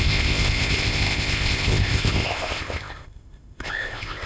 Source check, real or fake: fake